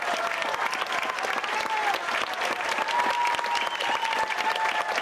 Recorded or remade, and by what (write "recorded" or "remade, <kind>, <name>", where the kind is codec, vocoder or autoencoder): recorded